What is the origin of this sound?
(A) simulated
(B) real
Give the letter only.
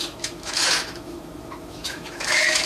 A